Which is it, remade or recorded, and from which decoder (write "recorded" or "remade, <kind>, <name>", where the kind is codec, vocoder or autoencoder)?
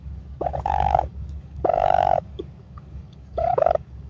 remade, codec, DAC